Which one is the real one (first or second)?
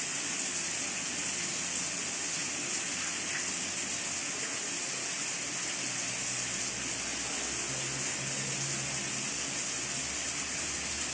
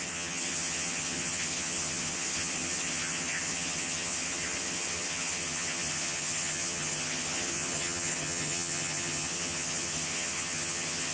first